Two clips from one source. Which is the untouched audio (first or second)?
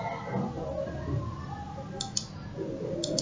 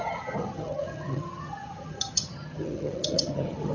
first